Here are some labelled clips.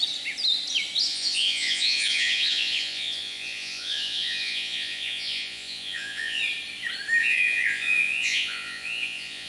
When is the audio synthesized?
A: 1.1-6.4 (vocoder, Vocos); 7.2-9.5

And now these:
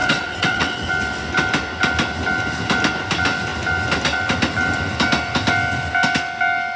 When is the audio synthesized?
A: 0.0-0.9 (vocoder, WaveNeXt)

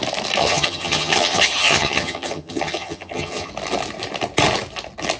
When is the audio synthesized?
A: 0.4-3.5 (vocoder, HiFi-GAN)

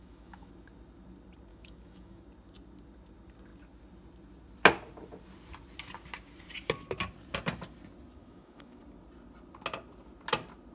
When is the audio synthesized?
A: 0.0-0.5 (autoencoder, DAC-VAE); 1.5-2.2; 8.2-8.8

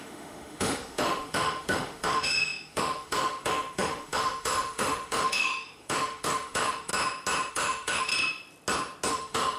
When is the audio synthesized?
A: 0.0-6.9 (autoencoder, DAC-VAE); 7.5-8.1; 9.1-9.6